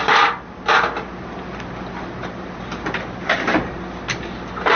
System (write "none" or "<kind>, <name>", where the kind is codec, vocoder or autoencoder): none